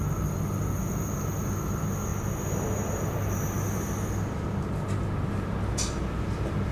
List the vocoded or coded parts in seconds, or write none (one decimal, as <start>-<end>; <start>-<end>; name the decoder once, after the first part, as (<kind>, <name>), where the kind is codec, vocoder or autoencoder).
none